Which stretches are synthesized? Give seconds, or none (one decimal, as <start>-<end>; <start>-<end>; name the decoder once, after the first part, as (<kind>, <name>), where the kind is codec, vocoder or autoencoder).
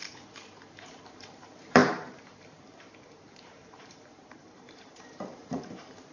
1.1-6.1 (vocoder, BigVGAN v2)